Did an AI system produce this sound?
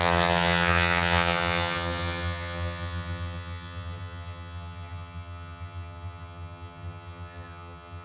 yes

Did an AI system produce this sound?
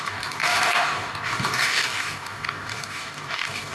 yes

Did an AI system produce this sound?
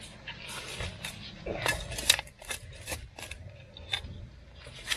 no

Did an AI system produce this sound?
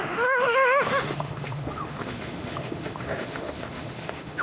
yes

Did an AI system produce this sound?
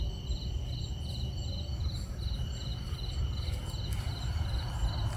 no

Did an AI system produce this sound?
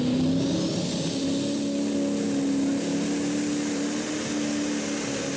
no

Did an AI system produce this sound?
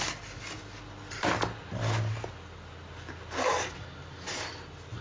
no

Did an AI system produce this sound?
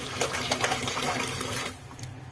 no